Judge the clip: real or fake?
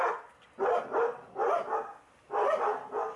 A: real